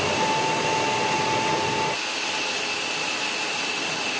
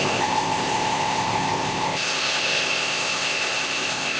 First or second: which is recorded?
first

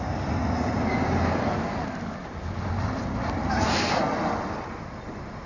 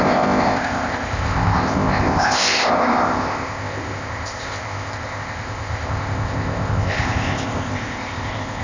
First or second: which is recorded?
first